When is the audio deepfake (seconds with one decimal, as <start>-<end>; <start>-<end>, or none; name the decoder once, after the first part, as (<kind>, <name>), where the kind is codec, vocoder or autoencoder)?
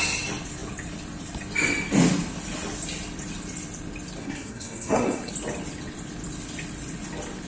4.2-5.3 (codec, SNAC)